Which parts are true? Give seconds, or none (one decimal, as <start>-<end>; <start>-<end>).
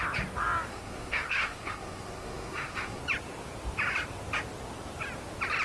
0.0-0.7; 3.0-5.6